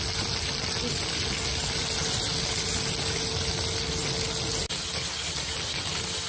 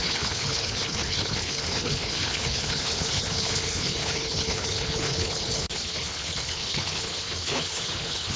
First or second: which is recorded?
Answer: first